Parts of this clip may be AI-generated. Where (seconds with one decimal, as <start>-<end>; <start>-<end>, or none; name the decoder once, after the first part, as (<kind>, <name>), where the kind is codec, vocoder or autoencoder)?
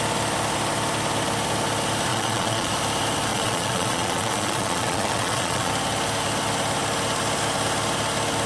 2.1-2.7 (vocoder, Vocos); 3.3-5.7